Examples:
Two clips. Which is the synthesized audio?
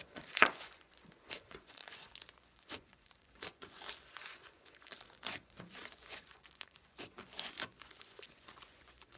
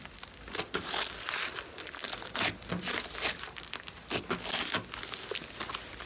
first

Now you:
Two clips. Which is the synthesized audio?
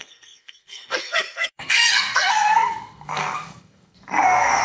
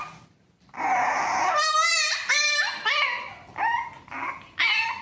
first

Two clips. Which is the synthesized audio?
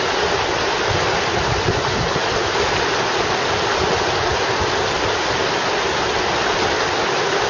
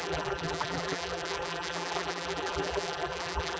second